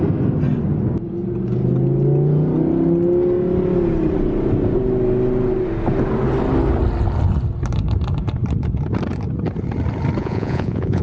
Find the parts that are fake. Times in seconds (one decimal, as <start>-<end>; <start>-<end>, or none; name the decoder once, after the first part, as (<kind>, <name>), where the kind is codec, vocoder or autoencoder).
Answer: 10.2-11.0 (vocoder, Vocos)